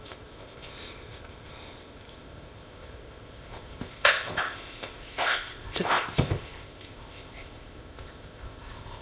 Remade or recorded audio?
remade